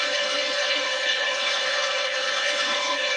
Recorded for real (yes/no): no